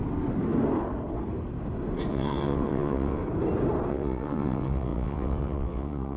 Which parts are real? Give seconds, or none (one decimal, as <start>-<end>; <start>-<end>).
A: 0.0-2.1; 3.2-3.9